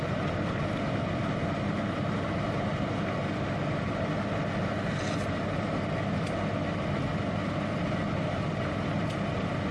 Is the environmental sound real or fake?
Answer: real